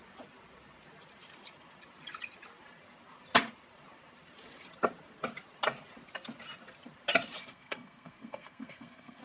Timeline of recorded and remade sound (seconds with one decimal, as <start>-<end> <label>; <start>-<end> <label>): 0.0-7.4 recorded; 7.4-9.2 remade